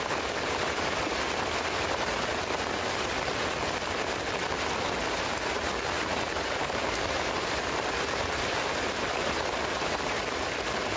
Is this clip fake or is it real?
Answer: real